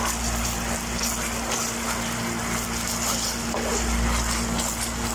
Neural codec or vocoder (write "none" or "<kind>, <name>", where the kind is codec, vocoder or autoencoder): none